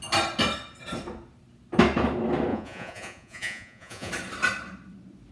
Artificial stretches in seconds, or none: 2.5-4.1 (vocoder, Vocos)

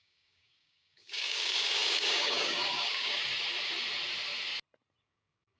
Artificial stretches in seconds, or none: 0.0-3.2 (codec, DAC); 5.0-5.6

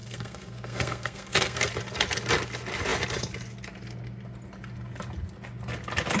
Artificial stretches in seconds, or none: 0.0-1.7 (codec, SNAC)

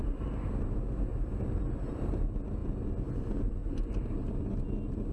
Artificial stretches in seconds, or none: none

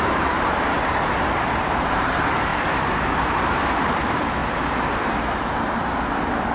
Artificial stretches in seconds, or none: 0.0-4.4 (vocoder, BigVGAN v2)

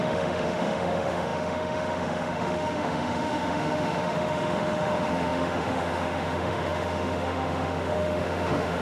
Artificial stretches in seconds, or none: 0.0-8.8 (autoencoder, DAC-VAE)

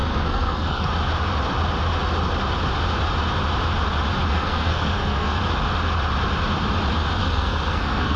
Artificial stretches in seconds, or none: 0.0-0.9 (codec, SNAC); 4.3-5.4; 7.2-8.2